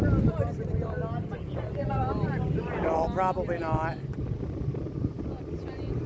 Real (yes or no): yes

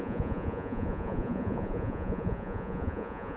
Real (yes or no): no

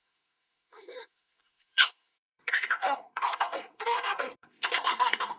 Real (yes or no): no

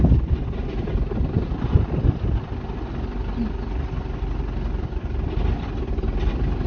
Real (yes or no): yes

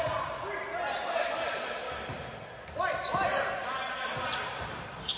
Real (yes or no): yes